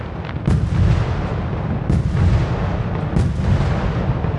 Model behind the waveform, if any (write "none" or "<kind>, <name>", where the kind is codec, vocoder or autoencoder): none